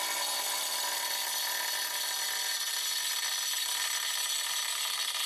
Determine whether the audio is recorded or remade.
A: recorded